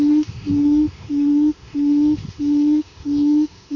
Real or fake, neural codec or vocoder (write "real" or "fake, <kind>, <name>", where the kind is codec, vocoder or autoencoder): fake, autoencoder, DAC-VAE